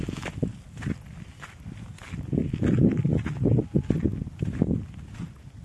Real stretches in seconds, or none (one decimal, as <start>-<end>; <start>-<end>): 0.0-5.6